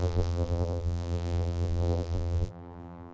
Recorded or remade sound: remade